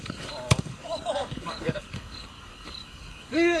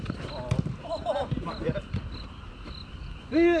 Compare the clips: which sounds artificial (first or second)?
first